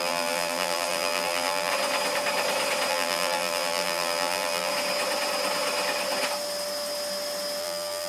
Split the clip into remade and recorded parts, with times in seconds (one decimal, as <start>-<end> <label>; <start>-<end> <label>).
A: 0.0-1.7 remade; 1.7-2.9 recorded; 2.9-4.7 remade; 4.7-7.6 recorded; 7.6-8.1 remade